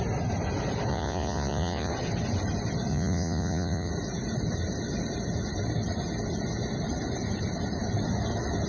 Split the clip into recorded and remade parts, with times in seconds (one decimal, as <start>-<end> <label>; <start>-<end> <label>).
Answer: 0.0-0.9 recorded; 0.9-1.9 remade; 1.9-2.9 recorded; 2.9-3.9 remade; 3.9-8.7 recorded